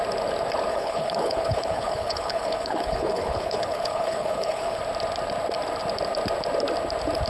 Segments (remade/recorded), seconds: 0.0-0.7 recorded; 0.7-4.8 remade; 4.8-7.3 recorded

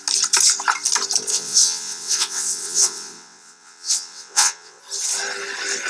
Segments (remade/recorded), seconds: 0.0-1.3 recorded; 1.3-4.8 remade; 4.8-5.9 recorded